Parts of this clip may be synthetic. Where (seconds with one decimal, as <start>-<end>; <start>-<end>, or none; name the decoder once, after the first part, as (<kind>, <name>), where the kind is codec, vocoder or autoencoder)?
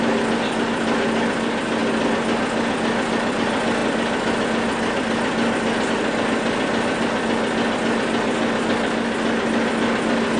none